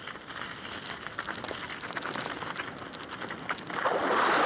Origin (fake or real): real